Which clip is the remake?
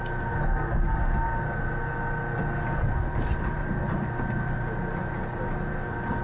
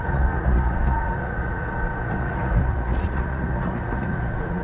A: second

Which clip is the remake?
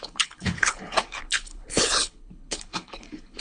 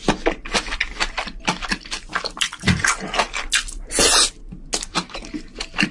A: first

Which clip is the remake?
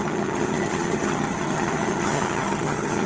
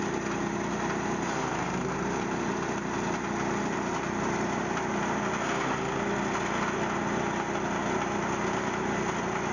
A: first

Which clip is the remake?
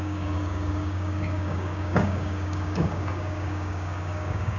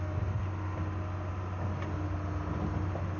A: first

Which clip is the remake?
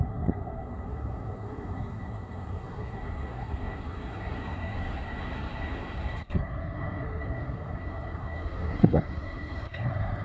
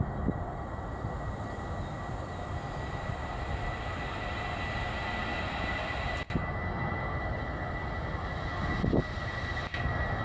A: first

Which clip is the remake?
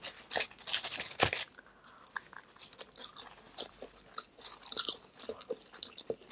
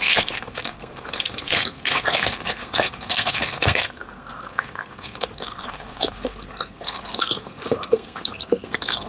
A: second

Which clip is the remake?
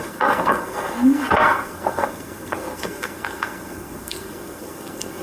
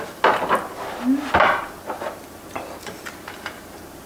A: first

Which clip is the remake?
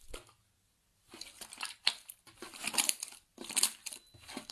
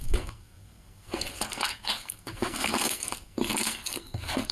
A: second